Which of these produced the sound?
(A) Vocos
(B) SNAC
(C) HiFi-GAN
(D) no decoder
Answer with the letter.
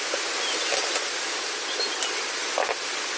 D